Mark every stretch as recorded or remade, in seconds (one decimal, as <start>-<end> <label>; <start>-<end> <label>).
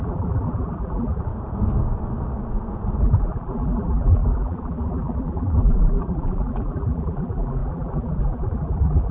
0.0-1.3 remade; 1.3-3.0 recorded; 3.0-9.1 remade